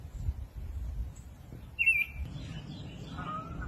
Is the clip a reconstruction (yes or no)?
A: no